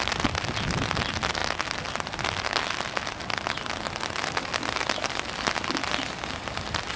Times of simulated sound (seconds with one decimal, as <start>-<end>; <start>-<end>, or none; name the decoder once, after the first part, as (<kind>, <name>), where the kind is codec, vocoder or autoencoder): none